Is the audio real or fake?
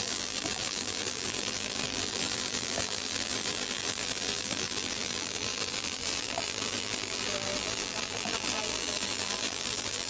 fake